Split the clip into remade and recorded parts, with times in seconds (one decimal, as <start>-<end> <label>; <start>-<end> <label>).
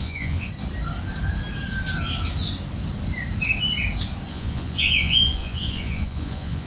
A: 0.0-0.5 remade; 0.5-4.3 recorded; 4.3-6.7 remade